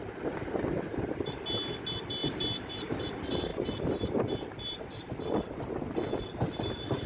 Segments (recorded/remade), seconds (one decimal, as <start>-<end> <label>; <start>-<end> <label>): 0.0-2.2 recorded; 2.2-2.8 remade; 2.8-3.5 recorded; 3.5-5.1 remade; 5.1-7.1 recorded